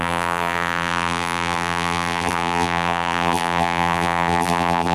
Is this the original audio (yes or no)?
no